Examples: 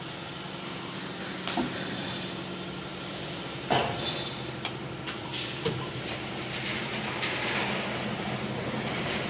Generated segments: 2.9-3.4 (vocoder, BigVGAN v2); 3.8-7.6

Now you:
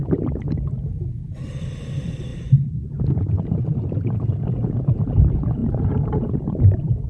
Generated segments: 0.0-7.1 (vocoder, BigVGAN v2)

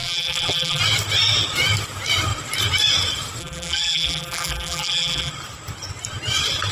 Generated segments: 0.0-0.8 (vocoder, BigVGAN v2); 3.4-5.3